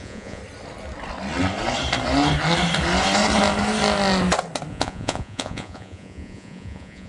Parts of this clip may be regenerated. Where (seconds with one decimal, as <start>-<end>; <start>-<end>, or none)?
0.0-0.4; 4.7-7.1